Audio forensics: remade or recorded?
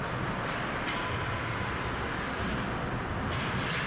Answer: recorded